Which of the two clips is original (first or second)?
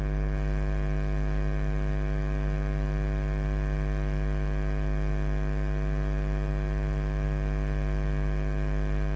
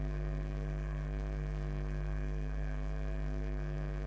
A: first